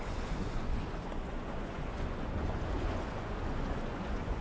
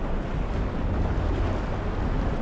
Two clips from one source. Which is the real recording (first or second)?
second